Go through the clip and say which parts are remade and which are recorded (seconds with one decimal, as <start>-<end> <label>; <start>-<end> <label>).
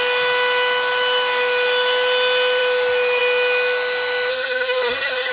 0.0-4.3 recorded; 4.3-5.3 remade